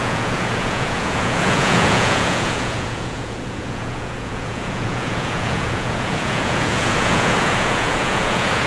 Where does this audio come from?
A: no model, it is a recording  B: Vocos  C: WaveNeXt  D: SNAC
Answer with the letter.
B